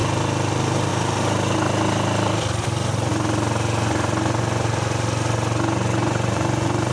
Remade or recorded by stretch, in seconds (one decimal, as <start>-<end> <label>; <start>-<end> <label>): 0.0-6.0 recorded; 6.0-6.9 remade